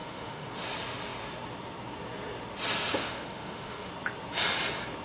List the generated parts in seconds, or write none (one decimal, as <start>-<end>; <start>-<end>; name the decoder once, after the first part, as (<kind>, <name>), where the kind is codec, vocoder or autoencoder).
0.0-0.5 (autoencoder, DAC-VAE); 2.9-3.9